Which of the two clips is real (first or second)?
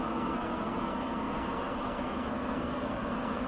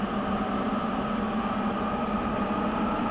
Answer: second